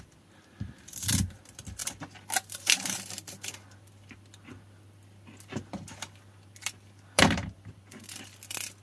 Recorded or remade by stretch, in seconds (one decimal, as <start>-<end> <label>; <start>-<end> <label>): 0.0-8.8 remade